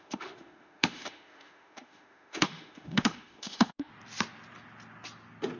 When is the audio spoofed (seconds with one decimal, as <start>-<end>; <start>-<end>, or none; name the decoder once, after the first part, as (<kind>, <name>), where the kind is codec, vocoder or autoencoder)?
0.0-3.9 (autoencoder, DAC-VAE)